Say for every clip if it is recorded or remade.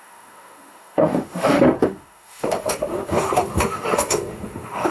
remade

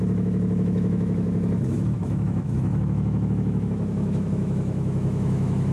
remade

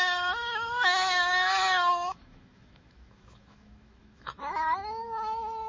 remade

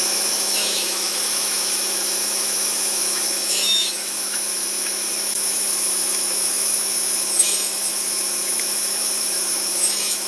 remade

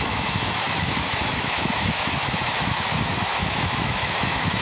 remade